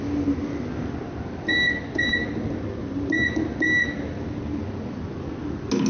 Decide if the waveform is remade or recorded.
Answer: recorded